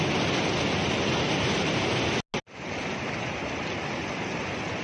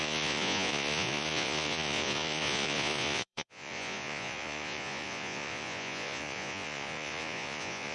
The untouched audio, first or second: first